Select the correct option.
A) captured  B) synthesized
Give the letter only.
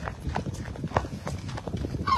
A